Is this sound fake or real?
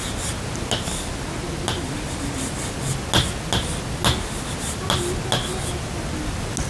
real